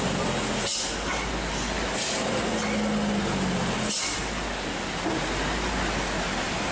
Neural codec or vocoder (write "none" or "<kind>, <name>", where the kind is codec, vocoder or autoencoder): none